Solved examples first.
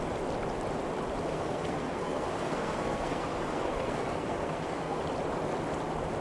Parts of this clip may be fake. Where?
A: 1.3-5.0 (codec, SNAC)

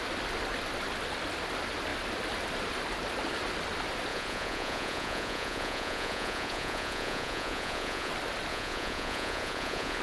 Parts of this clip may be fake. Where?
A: 4.1-8.1 (vocoder, Vocos); 8.5-10.0

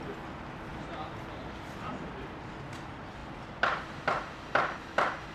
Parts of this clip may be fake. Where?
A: none

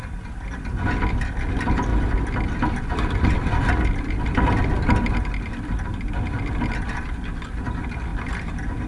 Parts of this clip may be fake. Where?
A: none

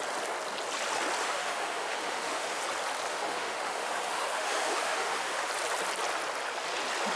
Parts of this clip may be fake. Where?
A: 1.2-2.6 (autoencoder, DAC-VAE); 3.1-5.5